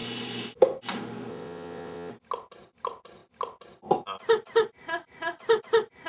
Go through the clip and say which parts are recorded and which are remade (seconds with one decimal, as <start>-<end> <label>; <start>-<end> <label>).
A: 0.0-1.3 recorded; 1.3-2.1 remade; 2.1-6.1 recorded